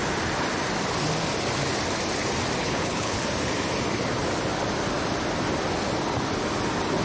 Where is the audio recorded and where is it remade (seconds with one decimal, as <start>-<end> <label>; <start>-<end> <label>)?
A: 0.0-2.6 recorded; 2.6-3.2 remade; 3.2-7.0 recorded